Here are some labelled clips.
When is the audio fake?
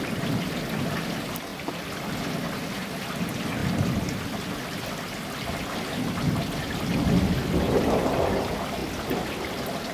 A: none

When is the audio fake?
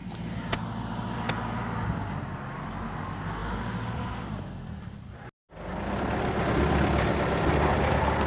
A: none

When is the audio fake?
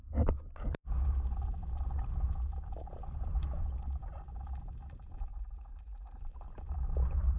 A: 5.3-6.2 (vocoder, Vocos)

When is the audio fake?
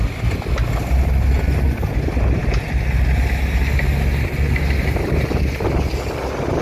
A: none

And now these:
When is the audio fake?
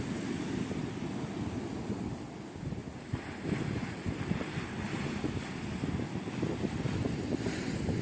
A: none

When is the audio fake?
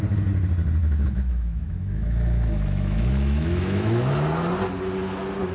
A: 0.8-4.1 (autoencoder, DAC-VAE)